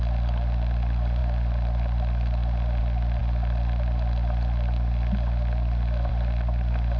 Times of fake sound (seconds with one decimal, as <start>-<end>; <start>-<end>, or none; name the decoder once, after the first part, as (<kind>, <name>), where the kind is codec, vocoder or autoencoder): none